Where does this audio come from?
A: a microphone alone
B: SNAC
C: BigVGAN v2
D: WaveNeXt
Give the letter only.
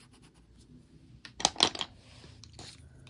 A